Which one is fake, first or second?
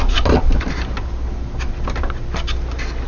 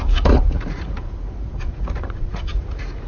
second